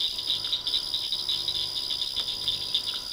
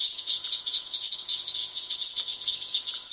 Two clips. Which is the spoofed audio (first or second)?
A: second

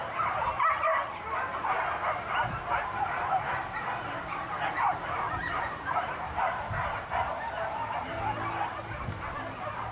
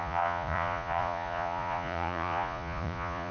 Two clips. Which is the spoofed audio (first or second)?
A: second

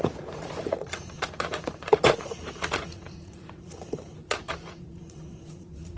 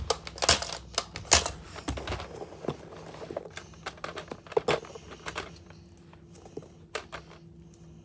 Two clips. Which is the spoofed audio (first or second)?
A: first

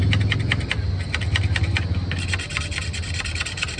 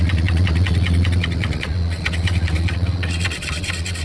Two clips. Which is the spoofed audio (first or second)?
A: second